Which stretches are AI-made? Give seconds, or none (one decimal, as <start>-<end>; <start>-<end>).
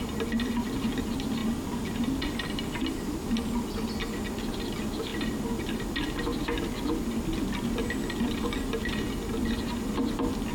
none